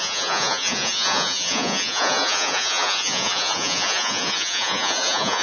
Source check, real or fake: fake